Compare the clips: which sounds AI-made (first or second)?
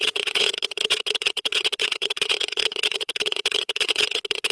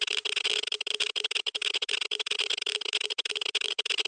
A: first